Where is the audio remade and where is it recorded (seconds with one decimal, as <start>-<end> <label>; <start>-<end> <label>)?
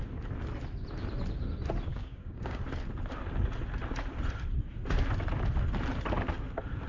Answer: 0.0-1.9 recorded; 1.9-2.6 remade; 2.6-6.9 recorded